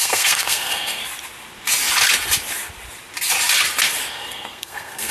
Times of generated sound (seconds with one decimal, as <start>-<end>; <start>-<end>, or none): 0.0-1.0; 4.1-5.1